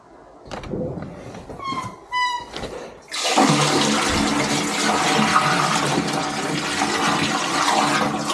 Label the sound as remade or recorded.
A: recorded